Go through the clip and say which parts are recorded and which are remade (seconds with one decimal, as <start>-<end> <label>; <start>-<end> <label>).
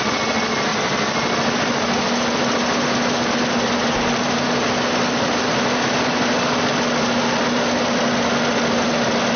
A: 0.0-9.4 recorded